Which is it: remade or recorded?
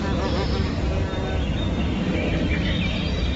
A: recorded